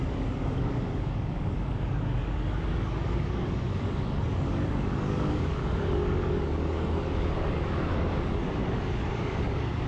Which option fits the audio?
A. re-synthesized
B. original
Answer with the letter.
A